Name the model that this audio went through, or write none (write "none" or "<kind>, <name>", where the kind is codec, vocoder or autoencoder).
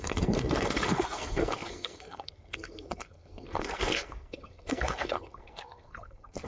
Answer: codec, SNAC